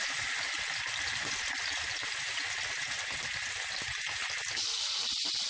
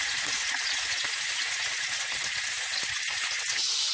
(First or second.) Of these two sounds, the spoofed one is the second